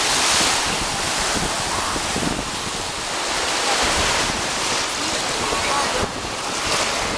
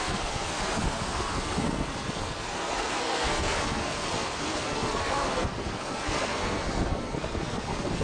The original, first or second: first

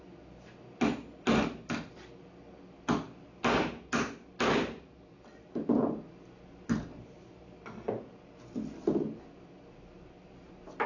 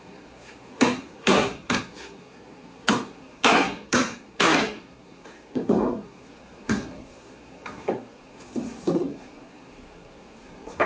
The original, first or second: first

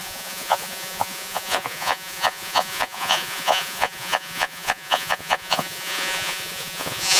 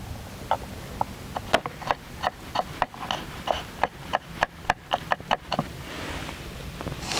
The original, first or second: second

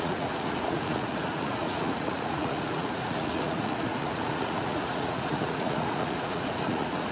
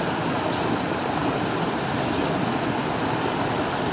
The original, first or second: second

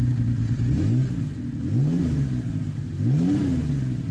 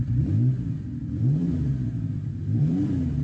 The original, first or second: first